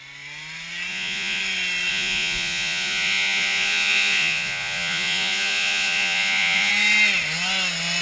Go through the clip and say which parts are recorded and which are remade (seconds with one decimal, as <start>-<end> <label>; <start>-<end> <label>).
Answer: 0.0-0.9 recorded; 0.9-1.4 remade; 1.4-1.9 recorded; 1.9-6.7 remade; 6.7-8.0 recorded